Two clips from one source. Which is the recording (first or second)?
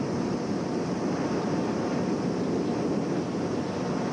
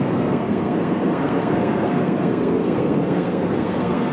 first